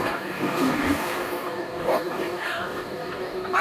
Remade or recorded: remade